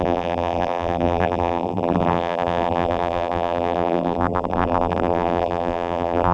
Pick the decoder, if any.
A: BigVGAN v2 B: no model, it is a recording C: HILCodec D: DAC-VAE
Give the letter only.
A